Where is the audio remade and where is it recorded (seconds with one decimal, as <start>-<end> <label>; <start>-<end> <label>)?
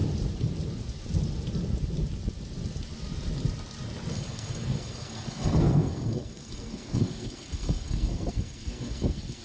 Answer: 0.0-4.1 recorded; 4.1-9.4 remade